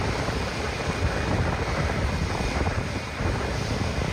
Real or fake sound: fake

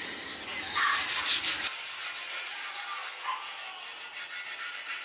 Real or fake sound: real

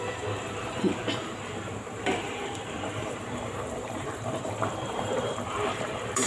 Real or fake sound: fake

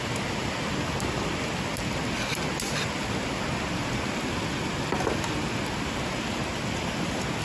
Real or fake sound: real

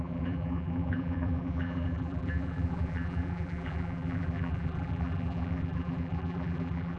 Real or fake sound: fake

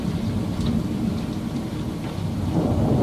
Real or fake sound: fake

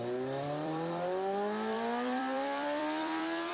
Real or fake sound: fake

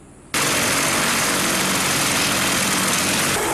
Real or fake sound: real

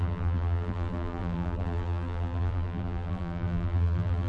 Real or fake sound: fake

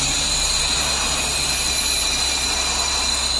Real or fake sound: real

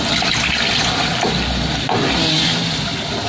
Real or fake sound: real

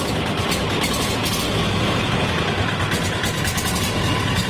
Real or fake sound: real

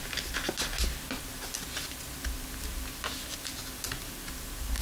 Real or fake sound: real